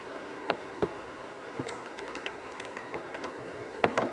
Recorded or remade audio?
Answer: remade